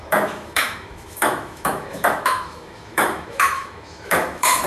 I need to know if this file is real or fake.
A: fake